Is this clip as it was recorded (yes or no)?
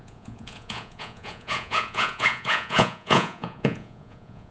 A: no